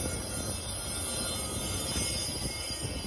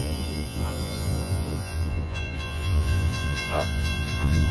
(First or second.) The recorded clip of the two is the first